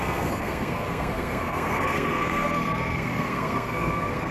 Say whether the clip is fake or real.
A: fake